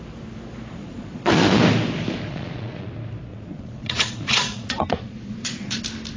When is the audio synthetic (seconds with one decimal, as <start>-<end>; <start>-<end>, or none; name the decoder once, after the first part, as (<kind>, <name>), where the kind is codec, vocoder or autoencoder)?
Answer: 0.8-1.6 (vocoder, Vocos); 2.3-2.9; 3.3-5.8